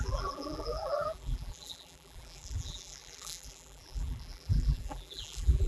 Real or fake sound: fake